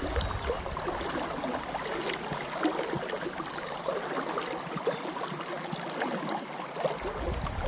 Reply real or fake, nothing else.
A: real